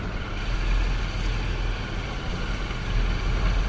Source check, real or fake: real